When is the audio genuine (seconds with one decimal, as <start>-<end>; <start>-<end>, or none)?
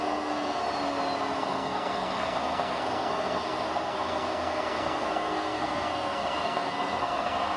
0.6-1.4